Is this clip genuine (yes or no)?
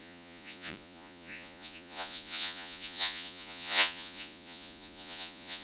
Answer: no